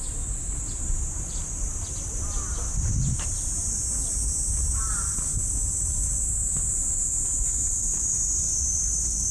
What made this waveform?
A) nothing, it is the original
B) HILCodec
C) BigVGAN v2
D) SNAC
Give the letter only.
C